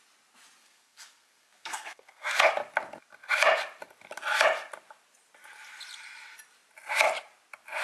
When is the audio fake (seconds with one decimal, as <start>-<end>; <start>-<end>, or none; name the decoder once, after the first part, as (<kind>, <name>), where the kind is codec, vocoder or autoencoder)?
0.6-2.5 (codec, SNAC)